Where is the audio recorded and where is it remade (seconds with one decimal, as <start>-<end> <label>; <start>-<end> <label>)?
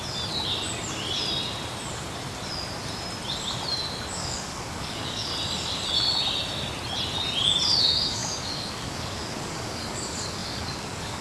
0.0-4.1 recorded; 4.1-5.3 remade; 5.3-7.8 recorded; 7.8-11.2 remade